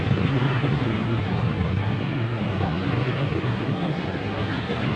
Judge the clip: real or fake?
fake